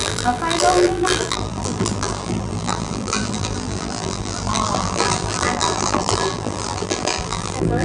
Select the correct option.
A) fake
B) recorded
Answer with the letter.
A